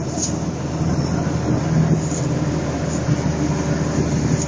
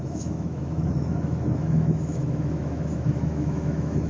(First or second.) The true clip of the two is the first